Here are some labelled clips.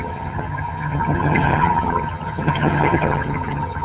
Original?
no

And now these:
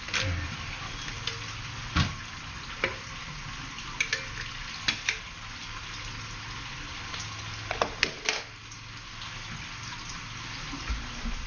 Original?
yes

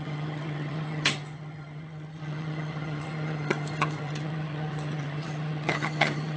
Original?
no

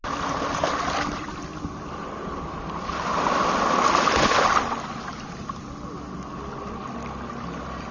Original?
yes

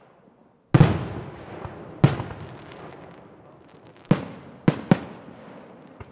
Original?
yes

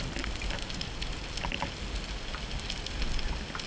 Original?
yes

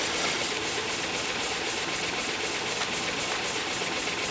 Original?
yes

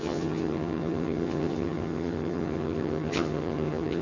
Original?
no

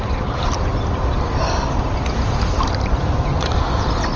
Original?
yes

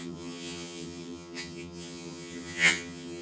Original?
no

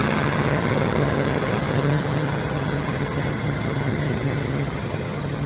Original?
no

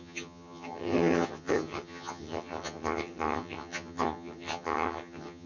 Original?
no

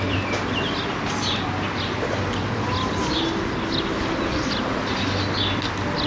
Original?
yes